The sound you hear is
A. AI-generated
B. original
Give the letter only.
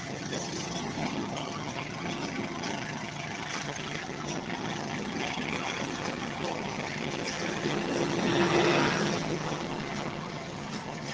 A